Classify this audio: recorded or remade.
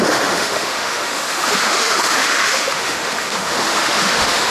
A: remade